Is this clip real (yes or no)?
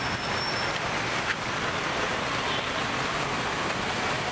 yes